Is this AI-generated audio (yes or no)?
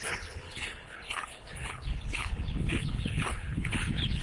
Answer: yes